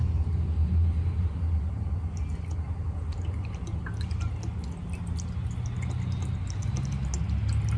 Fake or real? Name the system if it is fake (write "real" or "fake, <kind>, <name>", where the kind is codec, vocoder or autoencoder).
real